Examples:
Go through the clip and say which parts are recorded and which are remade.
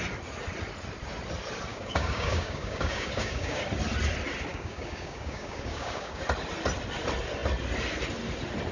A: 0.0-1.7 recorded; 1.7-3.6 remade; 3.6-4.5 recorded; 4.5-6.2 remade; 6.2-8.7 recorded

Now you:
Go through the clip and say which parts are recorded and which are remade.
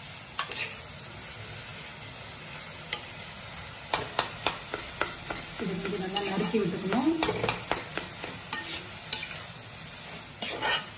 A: 0.0-11.0 recorded